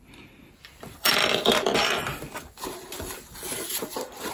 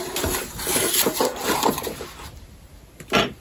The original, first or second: second